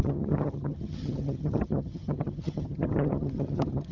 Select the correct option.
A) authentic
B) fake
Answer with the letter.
B